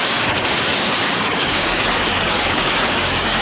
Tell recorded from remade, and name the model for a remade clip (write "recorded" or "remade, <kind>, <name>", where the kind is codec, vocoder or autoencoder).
remade, codec, DAC